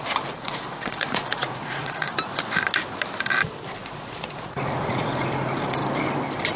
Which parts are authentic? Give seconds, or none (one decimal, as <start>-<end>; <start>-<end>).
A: 2.1-3.7; 5.8-6.6